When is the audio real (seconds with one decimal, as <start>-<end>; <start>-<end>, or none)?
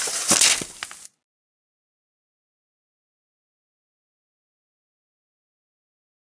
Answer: 0.0-6.3